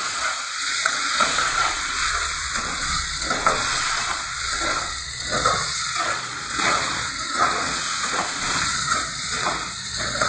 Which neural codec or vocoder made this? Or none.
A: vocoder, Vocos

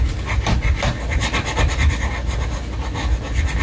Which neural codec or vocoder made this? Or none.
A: none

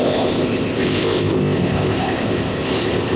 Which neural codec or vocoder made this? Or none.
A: codec, ZipCodec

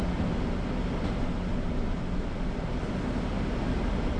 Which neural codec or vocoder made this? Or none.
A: none